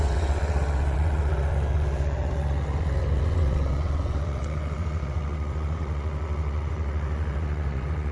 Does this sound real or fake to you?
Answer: fake